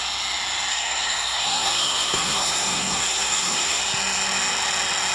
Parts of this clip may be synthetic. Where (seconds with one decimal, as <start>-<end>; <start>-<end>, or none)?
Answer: 0.7-3.8